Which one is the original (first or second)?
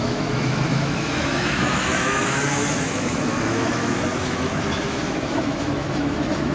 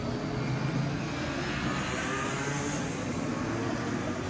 second